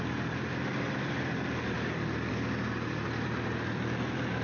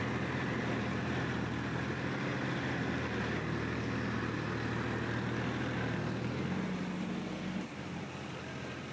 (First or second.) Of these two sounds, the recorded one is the second